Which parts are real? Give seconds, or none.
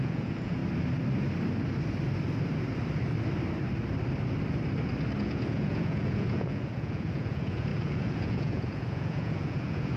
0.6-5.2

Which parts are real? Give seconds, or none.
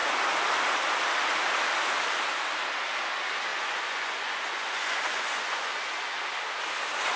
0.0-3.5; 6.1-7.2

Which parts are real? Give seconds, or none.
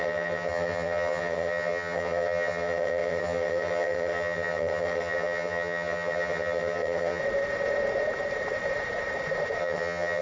7.2-9.6